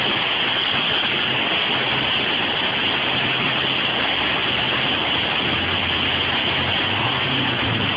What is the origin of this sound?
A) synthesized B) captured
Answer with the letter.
B